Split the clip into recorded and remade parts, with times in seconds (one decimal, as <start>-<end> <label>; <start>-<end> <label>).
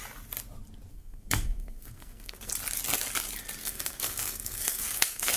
0.0-0.9 recorded; 0.9-2.5 remade; 2.5-3.6 recorded; 3.6-5.4 remade